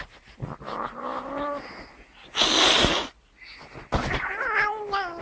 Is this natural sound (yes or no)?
yes